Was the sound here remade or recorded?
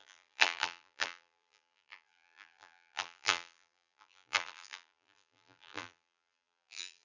remade